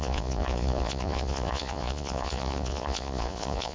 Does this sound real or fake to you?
fake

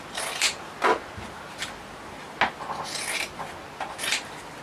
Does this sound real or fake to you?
real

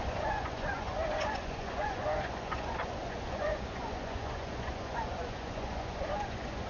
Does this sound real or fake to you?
fake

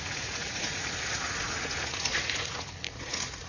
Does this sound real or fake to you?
fake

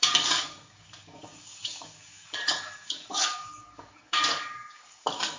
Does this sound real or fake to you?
fake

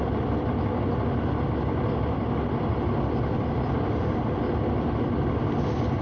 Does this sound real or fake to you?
real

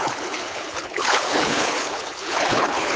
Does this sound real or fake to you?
fake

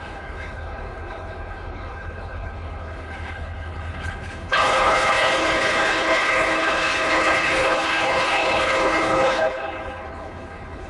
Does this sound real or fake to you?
fake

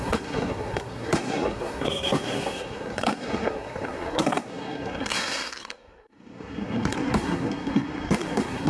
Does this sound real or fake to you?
fake